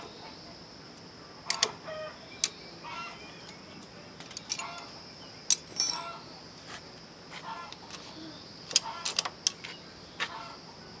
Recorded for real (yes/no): yes